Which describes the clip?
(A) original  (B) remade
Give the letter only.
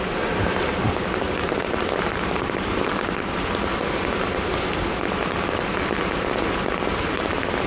A